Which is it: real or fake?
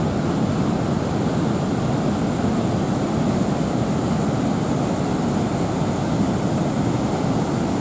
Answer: real